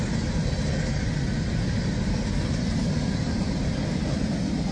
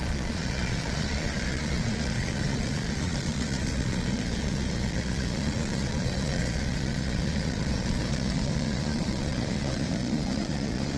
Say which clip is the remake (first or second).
second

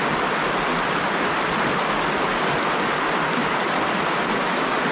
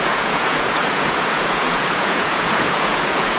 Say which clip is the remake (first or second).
second